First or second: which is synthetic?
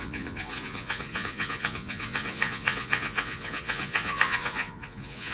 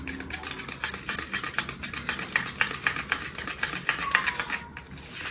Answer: first